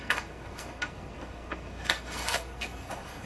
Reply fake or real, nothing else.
fake